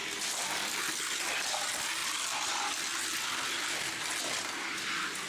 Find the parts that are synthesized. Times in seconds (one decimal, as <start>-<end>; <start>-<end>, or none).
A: none